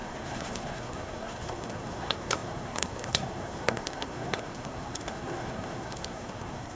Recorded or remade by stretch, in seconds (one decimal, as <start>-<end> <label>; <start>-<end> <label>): 0.0-6.8 remade